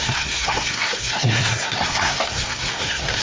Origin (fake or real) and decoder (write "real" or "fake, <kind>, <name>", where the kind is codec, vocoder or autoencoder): fake, codec, SNAC